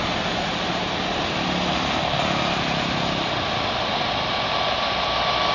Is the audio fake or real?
real